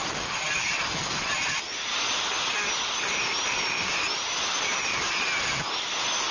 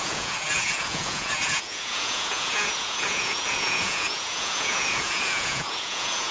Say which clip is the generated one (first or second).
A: second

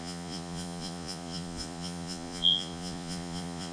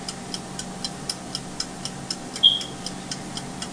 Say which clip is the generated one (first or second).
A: first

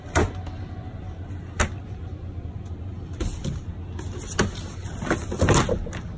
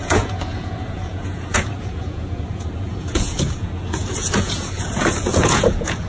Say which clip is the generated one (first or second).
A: second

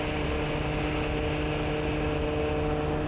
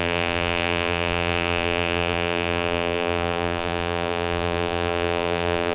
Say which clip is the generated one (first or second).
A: second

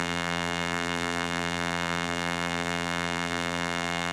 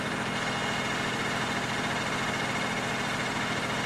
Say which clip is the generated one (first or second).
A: first